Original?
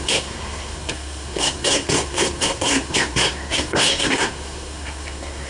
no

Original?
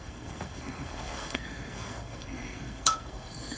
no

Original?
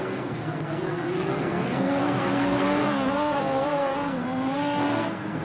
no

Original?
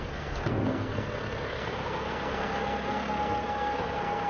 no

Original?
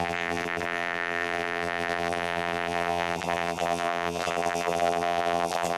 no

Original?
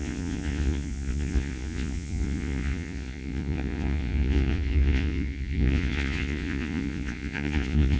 no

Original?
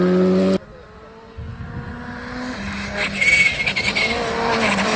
yes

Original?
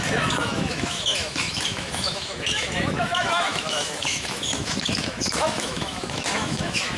no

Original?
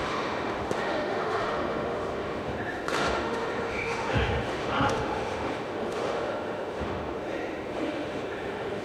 no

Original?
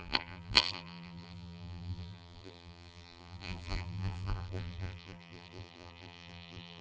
no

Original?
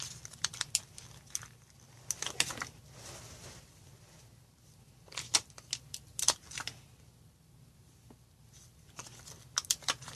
yes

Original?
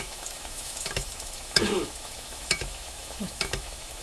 no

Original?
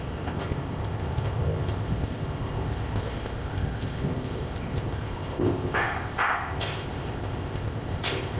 no